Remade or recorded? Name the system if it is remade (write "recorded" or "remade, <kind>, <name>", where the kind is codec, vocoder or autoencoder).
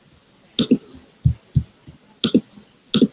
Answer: recorded